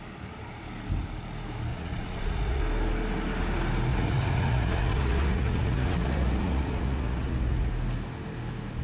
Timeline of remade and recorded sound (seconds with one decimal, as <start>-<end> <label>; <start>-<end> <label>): 0.0-1.7 recorded; 1.7-2.6 remade; 2.6-3.9 recorded; 3.9-7.7 remade; 7.7-8.8 recorded